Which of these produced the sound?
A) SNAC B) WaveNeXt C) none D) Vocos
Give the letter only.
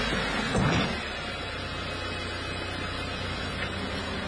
C